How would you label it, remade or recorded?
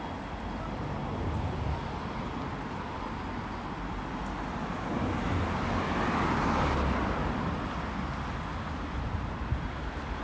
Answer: recorded